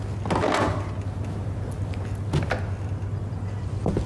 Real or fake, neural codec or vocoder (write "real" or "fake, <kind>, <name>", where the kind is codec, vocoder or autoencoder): real